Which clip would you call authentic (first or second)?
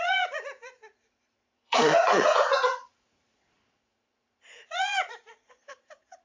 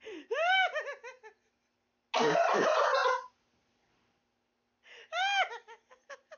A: second